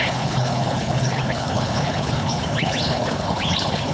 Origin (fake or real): fake